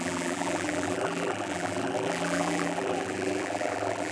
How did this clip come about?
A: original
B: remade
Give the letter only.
B